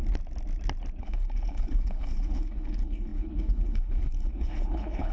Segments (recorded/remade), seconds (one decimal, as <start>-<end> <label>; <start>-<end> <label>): 0.0-1.0 recorded; 1.0-5.1 remade